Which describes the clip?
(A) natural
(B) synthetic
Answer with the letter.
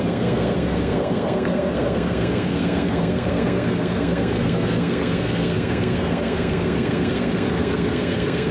B